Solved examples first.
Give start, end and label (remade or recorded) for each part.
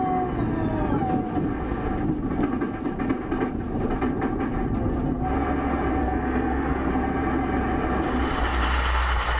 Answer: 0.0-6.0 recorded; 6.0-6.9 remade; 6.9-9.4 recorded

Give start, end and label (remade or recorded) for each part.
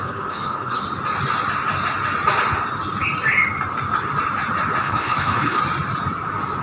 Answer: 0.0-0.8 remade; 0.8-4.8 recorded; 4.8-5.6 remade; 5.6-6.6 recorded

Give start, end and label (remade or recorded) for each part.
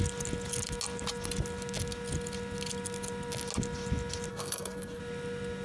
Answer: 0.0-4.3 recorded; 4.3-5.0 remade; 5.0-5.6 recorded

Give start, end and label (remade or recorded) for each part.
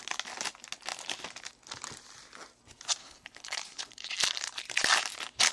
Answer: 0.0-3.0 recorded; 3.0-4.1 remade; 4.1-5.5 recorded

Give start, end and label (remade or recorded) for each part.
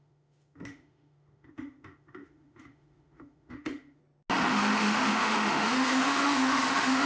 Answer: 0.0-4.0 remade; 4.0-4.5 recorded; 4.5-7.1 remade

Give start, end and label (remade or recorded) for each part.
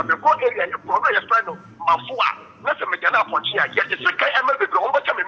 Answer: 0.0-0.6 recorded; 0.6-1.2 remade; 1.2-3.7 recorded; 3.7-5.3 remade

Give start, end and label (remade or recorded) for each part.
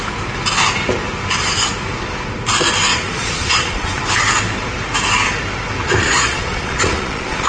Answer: 0.0-2.9 recorded; 2.9-4.0 remade; 4.0-6.0 recorded; 6.0-7.5 remade